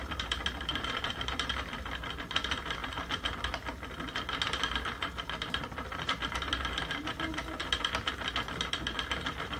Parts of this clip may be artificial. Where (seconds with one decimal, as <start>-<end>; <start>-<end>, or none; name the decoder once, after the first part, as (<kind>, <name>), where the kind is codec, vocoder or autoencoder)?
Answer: 0.7-1.5 (vocoder, BigVGAN v2)